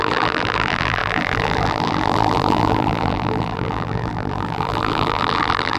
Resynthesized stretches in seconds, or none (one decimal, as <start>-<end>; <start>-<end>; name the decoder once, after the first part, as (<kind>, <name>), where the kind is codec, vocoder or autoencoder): 0.0-5.8 (vocoder, BigVGAN v2)

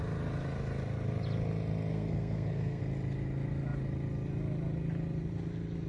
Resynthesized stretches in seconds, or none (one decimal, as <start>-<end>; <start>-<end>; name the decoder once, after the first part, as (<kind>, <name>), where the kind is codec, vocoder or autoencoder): 1.9-2.8 (codec, SNAC)

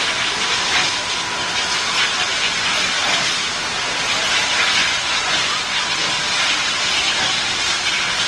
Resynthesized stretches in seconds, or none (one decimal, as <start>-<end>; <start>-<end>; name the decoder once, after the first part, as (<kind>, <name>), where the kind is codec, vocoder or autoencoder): 2.3-2.9 (vocoder, Vocos); 4.8-5.8

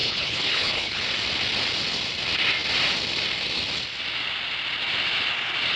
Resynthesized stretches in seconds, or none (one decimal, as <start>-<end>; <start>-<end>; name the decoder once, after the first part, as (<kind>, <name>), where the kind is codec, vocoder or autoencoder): 0.0-1.0 (codec, HILCodec)

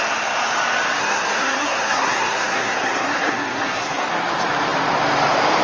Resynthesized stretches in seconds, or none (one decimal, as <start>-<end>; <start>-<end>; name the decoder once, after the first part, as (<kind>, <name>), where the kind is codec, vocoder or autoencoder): 1.0-4.1 (codec, SNAC)